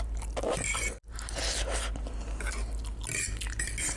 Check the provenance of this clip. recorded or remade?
recorded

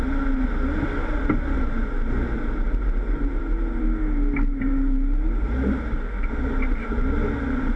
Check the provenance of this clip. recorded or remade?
recorded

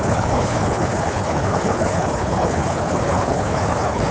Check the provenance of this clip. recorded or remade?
remade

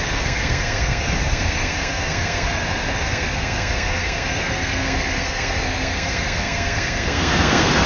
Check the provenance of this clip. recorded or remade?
remade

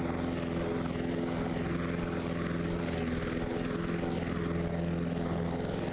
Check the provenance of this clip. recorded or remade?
recorded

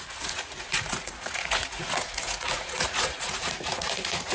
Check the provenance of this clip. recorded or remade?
remade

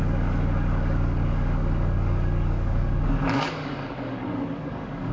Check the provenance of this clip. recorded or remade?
remade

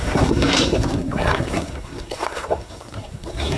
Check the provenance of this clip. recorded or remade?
remade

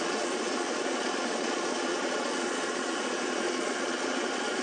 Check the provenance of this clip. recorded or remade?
remade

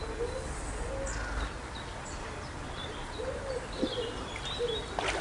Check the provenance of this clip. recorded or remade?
recorded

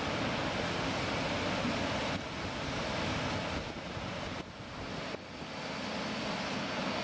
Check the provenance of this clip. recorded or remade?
recorded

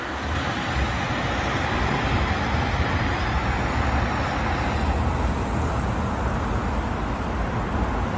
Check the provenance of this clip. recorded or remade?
recorded